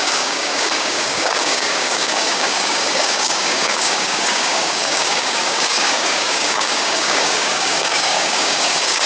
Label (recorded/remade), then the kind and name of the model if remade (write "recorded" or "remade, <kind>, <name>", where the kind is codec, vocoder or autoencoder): remade, codec, DAC